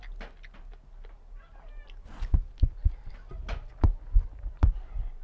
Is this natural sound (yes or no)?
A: yes